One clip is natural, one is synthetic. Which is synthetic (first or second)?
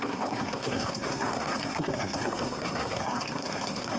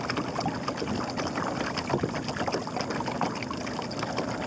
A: first